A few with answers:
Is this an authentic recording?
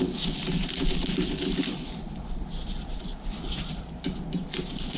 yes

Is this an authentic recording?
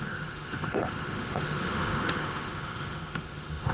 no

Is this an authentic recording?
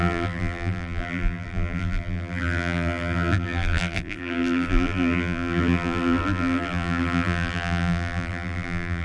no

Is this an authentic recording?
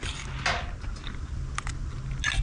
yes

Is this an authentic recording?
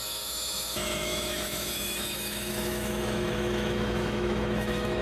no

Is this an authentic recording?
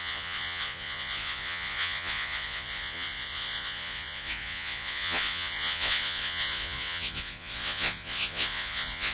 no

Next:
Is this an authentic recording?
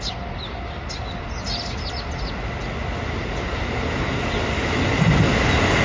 yes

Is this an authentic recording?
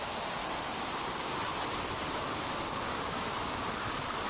yes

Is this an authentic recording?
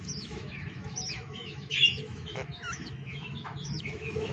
no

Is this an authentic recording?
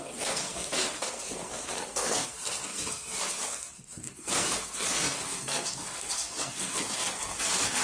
no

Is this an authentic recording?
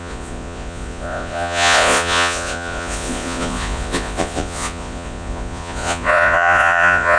no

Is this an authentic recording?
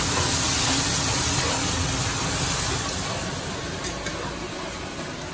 yes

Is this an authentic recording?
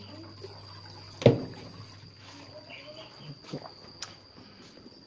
yes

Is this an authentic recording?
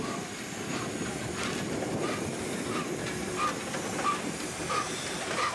yes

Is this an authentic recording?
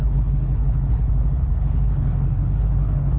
no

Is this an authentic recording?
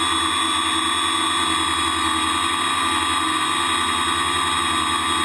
yes